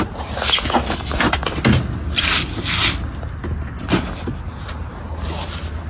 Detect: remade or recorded recorded